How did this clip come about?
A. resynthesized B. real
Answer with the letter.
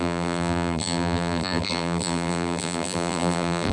A